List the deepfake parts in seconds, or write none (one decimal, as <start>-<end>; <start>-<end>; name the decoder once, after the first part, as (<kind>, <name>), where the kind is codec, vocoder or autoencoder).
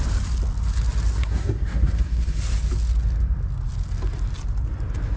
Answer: 1.2-2.4 (codec, SNAC)